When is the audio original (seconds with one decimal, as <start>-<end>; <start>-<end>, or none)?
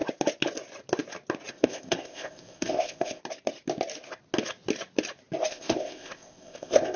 0.0-1.5; 3.2-5.5